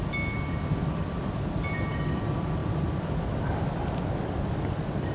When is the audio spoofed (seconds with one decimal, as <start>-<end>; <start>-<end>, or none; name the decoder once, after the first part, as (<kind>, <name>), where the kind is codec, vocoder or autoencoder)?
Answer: none